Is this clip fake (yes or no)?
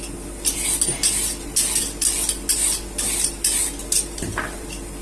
no